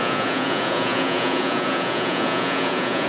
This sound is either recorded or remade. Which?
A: remade